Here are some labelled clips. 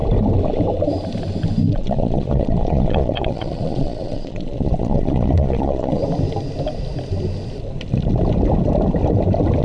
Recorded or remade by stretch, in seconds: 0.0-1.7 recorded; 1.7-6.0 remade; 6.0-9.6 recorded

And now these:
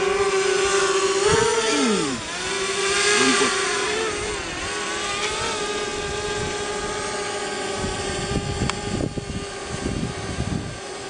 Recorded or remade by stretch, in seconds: 0.0-3.3 recorded; 3.3-4.3 remade; 4.3-11.1 recorded

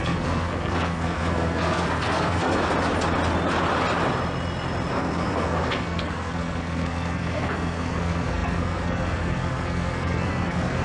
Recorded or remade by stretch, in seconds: 0.0-2.6 remade; 2.6-4.9 recorded; 4.9-10.8 remade

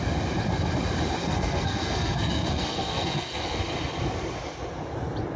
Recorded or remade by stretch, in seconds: 0.0-1.2 recorded; 1.2-3.6 remade; 3.6-5.4 recorded

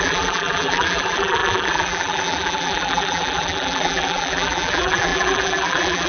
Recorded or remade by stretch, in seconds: 0.0-6.1 remade

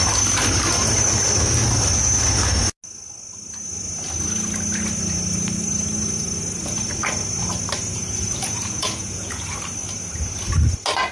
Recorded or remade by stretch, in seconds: 0.0-7.9 recorded; 7.9-9.4 remade; 9.4-11.1 recorded

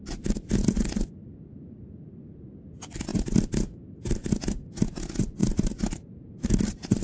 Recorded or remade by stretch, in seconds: 0.0-5.4 recorded; 5.4-7.0 remade

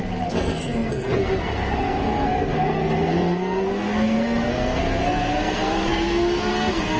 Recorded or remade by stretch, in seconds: 0.0-7.0 remade